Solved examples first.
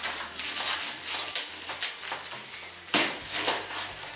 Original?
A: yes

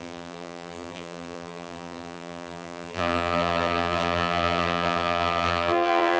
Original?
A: no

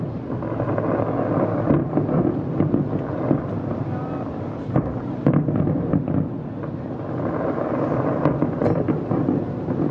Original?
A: yes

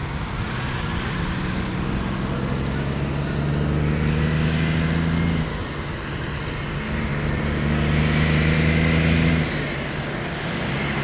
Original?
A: yes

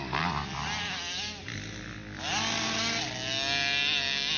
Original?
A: yes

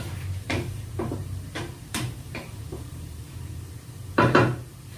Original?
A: no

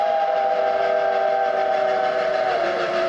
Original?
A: yes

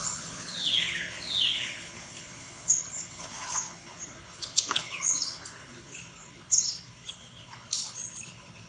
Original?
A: no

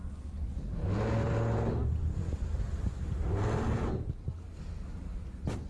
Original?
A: yes